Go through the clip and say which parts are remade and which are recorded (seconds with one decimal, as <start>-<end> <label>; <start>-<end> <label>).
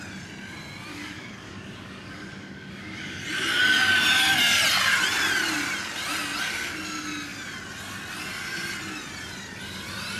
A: 0.0-0.9 recorded; 0.9-3.2 remade; 3.2-10.2 recorded